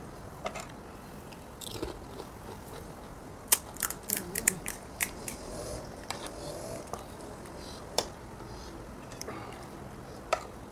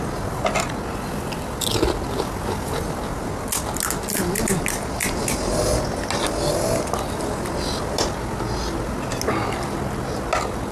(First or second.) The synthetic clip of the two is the first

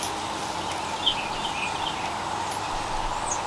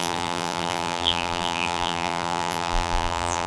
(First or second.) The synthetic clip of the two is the second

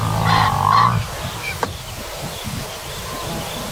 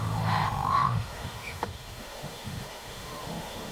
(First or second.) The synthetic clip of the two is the second